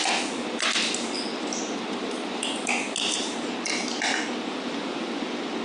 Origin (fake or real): real